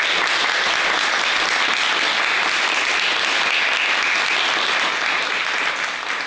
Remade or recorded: recorded